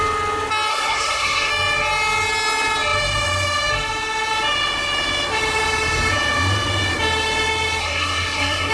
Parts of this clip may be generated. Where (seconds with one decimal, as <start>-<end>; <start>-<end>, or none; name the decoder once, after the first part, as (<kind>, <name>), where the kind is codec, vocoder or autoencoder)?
0.7-1.5 (codec, SNAC); 7.8-8.7